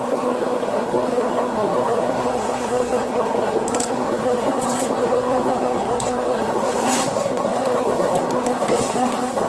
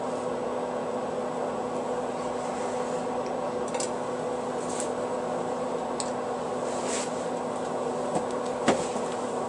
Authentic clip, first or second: second